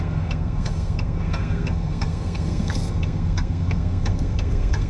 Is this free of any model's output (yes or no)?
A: no